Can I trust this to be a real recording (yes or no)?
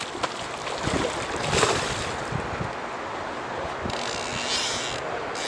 yes